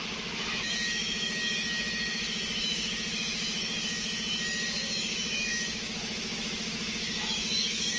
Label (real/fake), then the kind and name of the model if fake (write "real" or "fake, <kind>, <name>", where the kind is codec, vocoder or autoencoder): fake, autoencoder, DAC-VAE